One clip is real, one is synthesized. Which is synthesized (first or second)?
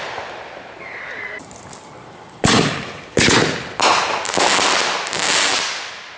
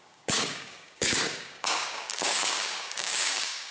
second